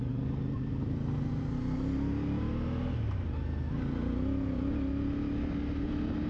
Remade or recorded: recorded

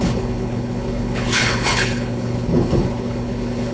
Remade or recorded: remade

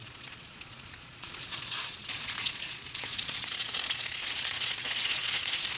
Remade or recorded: remade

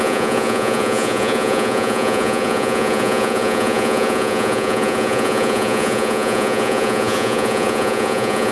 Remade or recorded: remade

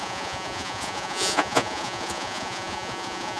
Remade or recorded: remade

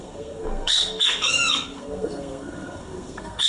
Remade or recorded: remade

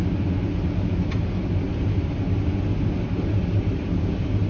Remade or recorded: recorded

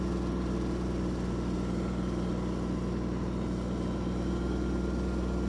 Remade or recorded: recorded